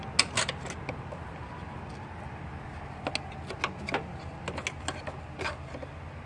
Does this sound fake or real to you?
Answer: real